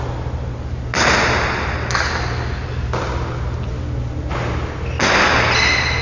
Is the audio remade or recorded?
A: recorded